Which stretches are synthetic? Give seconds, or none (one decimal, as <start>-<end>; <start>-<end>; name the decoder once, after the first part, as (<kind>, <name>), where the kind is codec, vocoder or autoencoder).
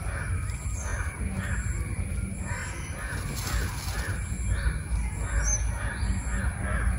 none